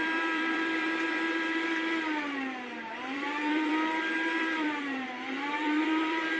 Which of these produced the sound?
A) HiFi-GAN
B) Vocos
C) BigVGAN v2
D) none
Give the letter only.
C